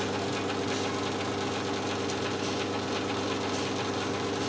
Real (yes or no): yes